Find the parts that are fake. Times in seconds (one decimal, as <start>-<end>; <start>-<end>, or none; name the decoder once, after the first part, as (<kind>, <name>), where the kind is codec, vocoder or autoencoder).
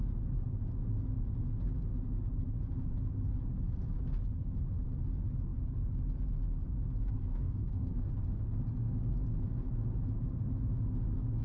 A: 7.3-8.1 (codec, DAC)